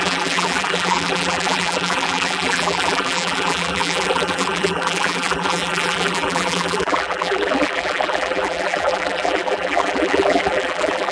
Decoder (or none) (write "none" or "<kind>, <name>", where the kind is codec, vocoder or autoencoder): vocoder, BigVGAN v2